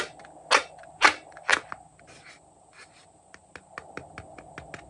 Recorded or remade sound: recorded